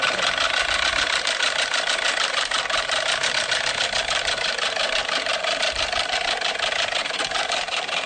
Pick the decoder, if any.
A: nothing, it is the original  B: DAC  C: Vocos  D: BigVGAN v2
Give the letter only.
D